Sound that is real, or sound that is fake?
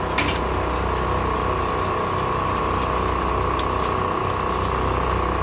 real